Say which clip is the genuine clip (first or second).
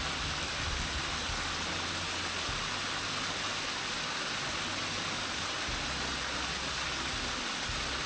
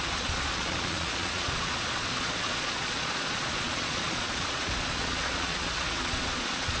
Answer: first